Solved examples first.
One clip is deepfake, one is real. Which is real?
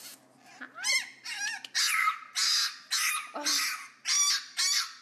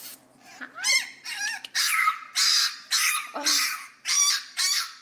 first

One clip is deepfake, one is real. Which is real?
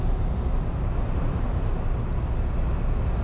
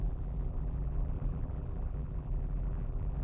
first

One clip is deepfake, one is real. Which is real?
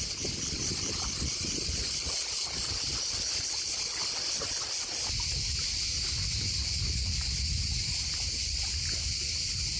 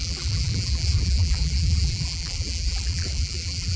first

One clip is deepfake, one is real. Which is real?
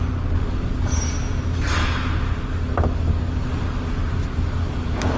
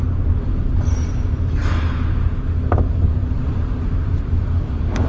first